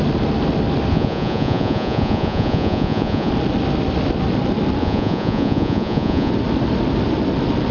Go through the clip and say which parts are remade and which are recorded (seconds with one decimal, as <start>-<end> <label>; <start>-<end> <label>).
0.0-0.9 recorded; 0.9-3.3 remade; 3.3-4.8 recorded; 4.8-6.3 remade; 6.3-7.7 recorded

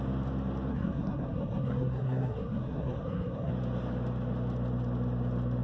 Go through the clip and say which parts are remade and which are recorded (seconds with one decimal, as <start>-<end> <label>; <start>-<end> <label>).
0.0-0.7 recorded; 0.7-3.5 remade; 3.5-5.6 recorded